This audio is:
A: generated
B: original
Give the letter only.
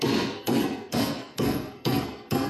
A